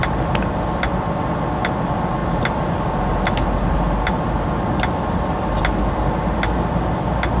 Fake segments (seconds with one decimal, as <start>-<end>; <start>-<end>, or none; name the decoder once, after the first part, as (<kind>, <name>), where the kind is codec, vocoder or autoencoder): none

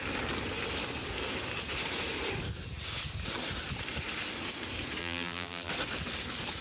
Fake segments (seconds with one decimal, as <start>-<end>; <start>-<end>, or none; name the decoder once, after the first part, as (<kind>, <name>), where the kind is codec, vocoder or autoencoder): 5.0-5.7 (vocoder, BigVGAN v2)

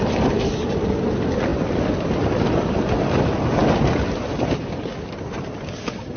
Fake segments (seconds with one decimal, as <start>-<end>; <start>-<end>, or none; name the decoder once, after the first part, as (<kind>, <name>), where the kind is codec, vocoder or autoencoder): none

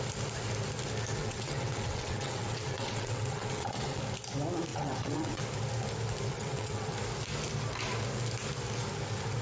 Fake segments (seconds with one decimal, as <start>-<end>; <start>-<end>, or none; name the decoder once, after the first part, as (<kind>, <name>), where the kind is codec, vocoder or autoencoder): 1.2-4.0 (vocoder, WaveNeXt); 4.7-5.4; 6.3-6.9